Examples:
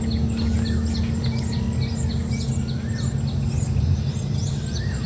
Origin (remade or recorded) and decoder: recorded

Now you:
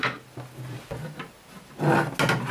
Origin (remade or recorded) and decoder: recorded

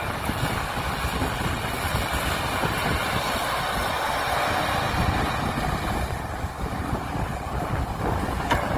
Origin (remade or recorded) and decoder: recorded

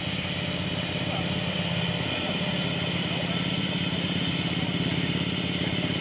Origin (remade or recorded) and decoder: recorded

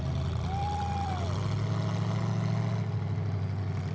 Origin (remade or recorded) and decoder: recorded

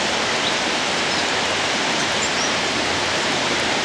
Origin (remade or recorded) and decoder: remade, vocoder, BigVGAN v2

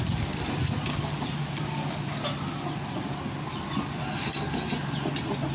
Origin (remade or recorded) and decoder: recorded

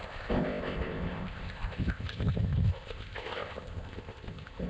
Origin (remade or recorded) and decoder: remade, codec, ZipCodec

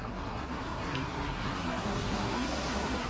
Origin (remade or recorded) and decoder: remade, codec, SNAC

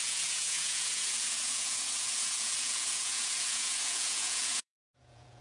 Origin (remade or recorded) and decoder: remade, vocoder, Vocos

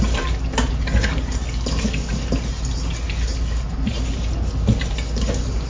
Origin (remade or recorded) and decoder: recorded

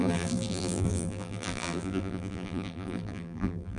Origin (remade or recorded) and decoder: remade, vocoder, BigVGAN v2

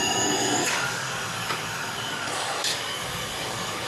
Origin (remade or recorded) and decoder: remade, codec, DAC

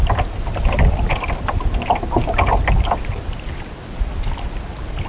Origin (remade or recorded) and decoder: recorded